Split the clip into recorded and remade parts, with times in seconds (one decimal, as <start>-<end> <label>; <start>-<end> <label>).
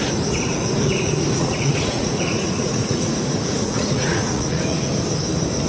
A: 0.0-1.4 recorded; 1.4-4.8 remade; 4.8-5.7 recorded